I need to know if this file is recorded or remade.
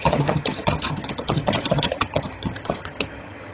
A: remade